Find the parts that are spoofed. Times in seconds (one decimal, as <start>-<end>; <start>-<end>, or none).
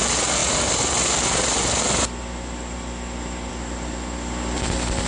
none